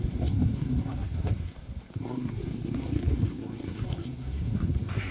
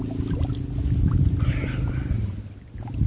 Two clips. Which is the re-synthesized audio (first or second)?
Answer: first